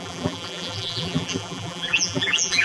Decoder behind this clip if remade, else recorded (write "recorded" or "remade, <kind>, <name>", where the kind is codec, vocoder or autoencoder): remade, vocoder, BigVGAN v2